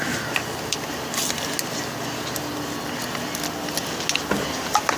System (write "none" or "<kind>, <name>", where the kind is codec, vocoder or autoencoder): none